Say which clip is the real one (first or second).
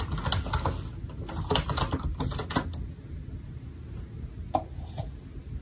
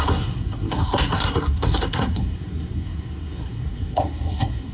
first